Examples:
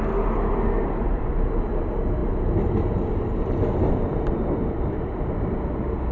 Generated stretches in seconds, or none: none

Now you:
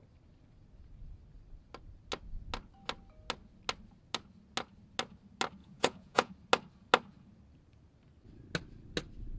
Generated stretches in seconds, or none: 5.6-6.3

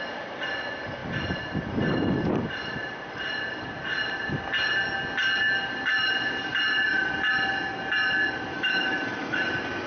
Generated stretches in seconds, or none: 8.5-9.5

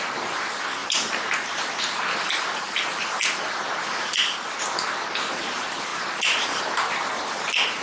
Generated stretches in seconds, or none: none

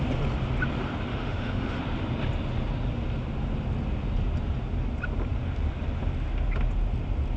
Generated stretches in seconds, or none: 1.1-1.8

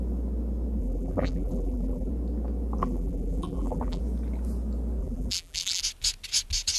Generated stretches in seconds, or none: 0.8-2.1; 2.8-4.0; 5.0-5.8